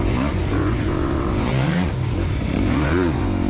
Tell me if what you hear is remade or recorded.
remade